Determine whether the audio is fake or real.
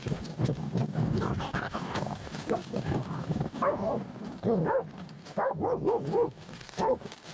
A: fake